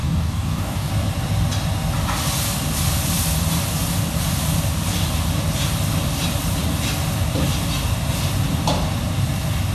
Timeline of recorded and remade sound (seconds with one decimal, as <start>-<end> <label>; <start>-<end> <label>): 0.0-0.9 remade; 0.9-9.7 recorded